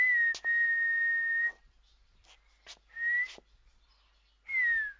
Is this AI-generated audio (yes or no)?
no